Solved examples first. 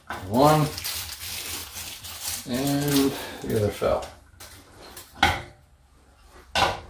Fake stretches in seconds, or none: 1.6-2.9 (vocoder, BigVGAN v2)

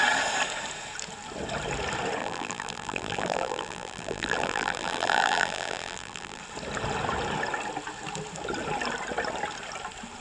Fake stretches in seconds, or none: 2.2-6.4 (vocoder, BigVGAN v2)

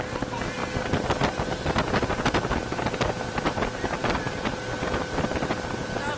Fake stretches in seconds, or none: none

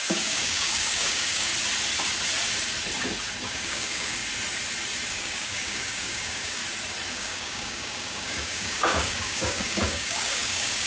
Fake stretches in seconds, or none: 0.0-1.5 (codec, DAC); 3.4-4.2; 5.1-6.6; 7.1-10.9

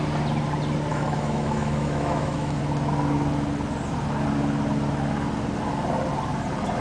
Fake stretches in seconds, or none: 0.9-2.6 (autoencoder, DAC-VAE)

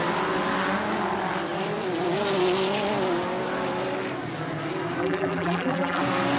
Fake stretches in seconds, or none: 5.0-6.0 (vocoder, BigVGAN v2)

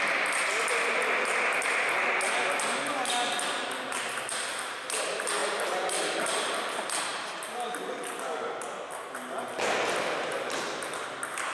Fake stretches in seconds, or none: none